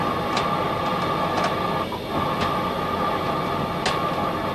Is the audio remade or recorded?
recorded